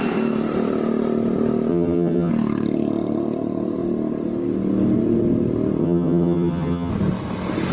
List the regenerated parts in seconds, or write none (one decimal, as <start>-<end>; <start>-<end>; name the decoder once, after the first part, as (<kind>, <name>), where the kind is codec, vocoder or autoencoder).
1.7-2.3 (vocoder, HiFi-GAN); 5.8-6.9